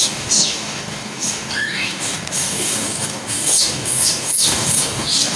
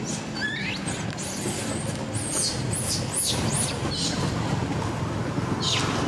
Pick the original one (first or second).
second